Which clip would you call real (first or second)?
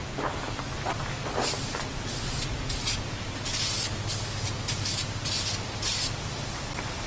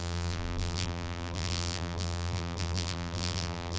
first